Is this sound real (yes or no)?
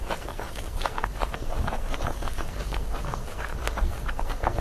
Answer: no